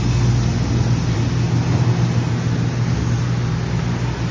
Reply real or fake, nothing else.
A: real